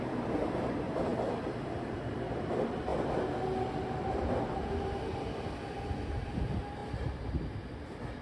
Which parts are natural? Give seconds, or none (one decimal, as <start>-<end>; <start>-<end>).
2.9-3.8; 6.8-8.2